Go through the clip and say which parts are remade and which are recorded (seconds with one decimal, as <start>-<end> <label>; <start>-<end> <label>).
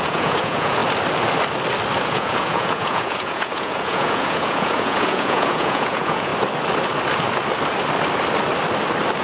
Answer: 0.0-0.8 remade; 0.8-2.0 recorded; 2.0-6.3 remade; 6.3-9.2 recorded